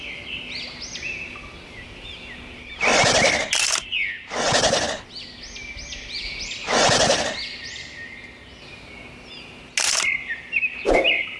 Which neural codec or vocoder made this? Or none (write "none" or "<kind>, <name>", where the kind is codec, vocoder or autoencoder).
none